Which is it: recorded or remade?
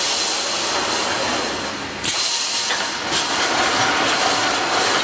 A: recorded